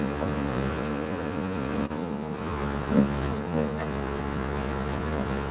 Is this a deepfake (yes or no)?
yes